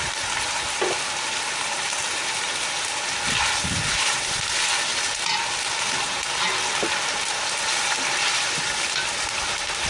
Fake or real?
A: real